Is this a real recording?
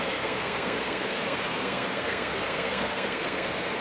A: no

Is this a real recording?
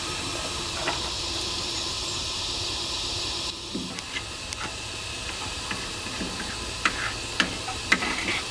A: yes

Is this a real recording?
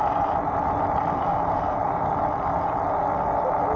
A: yes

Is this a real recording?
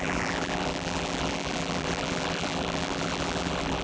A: no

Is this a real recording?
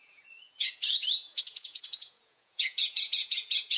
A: no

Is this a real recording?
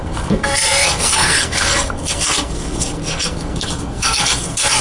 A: no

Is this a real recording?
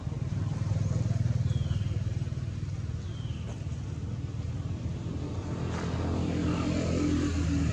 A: yes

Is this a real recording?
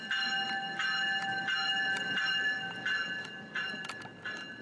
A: yes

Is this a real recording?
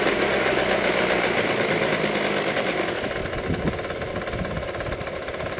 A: no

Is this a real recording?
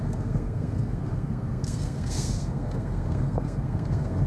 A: no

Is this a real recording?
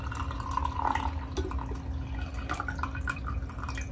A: yes